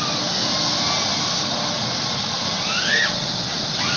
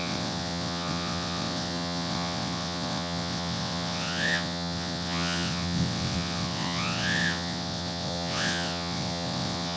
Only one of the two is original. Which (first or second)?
first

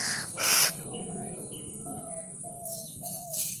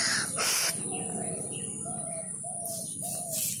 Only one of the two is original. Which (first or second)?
second